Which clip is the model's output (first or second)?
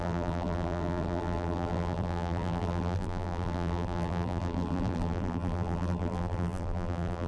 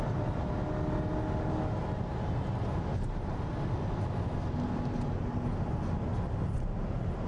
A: first